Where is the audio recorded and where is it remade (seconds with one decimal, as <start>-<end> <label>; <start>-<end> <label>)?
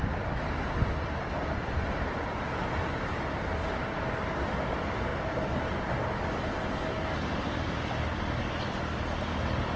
0.0-9.8 recorded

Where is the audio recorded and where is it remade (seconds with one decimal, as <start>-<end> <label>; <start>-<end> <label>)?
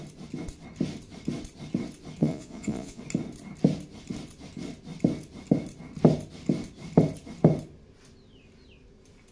0.0-2.2 recorded; 2.2-3.0 remade; 3.0-9.3 recorded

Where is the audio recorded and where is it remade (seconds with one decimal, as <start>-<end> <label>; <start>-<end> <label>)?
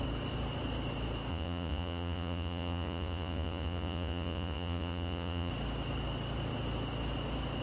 0.0-1.3 recorded; 1.3-5.5 remade; 5.5-7.6 recorded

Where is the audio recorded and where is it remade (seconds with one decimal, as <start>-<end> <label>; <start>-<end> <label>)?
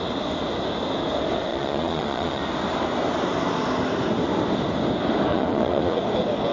0.0-1.5 recorded; 1.5-2.4 remade; 2.4-5.3 recorded; 5.3-6.0 remade; 6.0-6.5 recorded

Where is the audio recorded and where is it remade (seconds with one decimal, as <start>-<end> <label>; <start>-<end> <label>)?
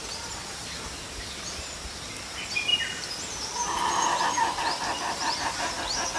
0.0-6.2 recorded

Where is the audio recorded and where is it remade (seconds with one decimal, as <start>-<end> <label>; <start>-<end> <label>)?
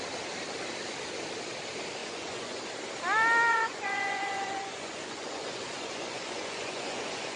0.0-2.0 recorded; 2.0-2.6 remade; 2.6-3.5 recorded; 3.5-7.4 remade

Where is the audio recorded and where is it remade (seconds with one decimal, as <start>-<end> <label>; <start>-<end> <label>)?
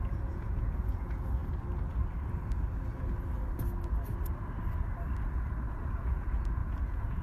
0.0-1.4 remade; 1.4-5.7 recorded; 5.7-7.2 remade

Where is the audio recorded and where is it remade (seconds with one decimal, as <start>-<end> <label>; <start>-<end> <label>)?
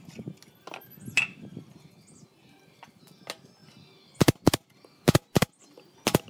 0.0-6.3 recorded